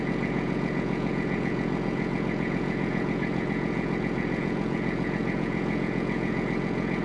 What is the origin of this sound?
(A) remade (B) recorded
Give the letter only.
A